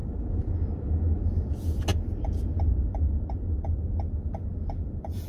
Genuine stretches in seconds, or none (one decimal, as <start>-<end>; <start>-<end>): 1.5-5.3